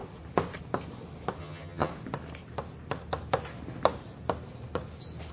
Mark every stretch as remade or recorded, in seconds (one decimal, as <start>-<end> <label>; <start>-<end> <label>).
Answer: 0.0-1.4 recorded; 1.4-1.9 remade; 1.9-5.3 recorded